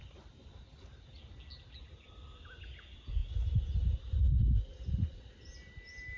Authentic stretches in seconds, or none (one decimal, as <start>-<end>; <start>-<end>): 0.0-6.2